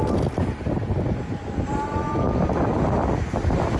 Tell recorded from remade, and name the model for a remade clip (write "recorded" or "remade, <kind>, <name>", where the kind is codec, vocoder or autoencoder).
recorded